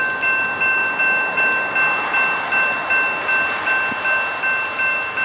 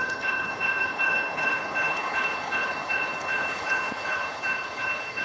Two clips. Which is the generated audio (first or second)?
second